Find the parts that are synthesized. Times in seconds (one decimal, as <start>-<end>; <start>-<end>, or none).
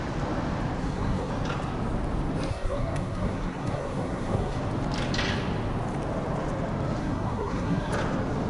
0.8-1.3; 2.5-4.6; 7.0-7.9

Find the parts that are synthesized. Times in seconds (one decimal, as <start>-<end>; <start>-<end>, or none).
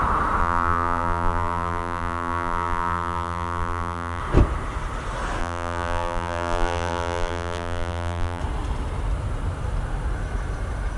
0.4-4.2; 5.4-8.4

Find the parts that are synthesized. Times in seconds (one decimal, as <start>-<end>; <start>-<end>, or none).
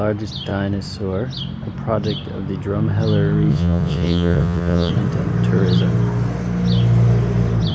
3.5-4.9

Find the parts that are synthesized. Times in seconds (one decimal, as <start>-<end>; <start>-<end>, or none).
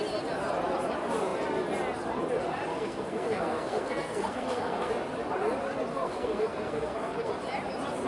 2.7-4.9; 5.9-7.3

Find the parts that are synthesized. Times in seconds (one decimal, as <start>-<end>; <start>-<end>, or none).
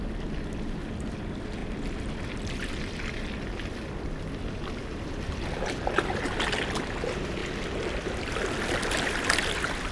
none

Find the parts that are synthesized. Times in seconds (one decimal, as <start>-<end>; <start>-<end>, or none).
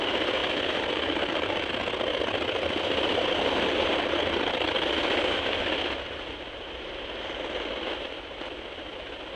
0.4-1.7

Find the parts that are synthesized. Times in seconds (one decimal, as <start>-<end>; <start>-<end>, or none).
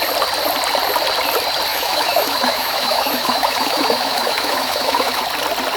1.7-5.2